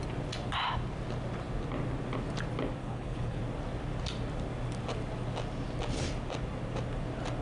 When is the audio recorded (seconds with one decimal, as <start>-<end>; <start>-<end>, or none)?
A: 0.0-2.8; 3.4-7.4